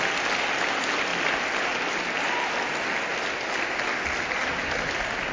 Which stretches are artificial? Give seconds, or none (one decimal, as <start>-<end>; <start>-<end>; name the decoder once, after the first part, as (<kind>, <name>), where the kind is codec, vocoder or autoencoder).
none